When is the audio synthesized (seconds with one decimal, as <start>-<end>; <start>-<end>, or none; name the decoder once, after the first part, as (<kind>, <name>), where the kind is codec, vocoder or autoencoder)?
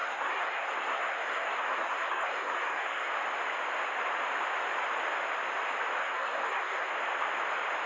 0.0-3.1 (codec, SNAC); 6.0-6.9